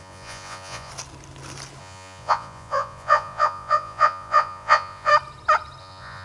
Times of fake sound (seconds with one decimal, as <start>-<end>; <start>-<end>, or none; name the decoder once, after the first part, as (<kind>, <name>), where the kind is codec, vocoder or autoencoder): 0.0-0.9 (vocoder, Vocos); 1.8-5.1; 5.8-6.2